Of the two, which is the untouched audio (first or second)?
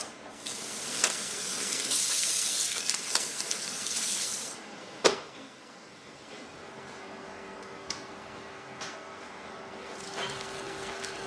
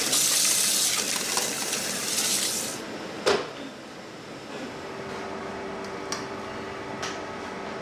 second